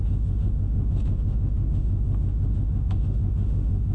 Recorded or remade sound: remade